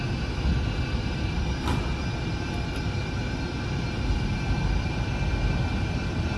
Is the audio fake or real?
real